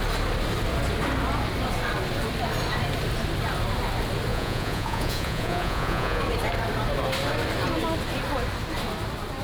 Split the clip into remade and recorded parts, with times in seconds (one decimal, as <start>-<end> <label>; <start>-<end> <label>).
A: 0.0-4.3 recorded; 4.3-6.2 remade; 6.2-9.4 recorded